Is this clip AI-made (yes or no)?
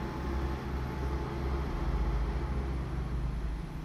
no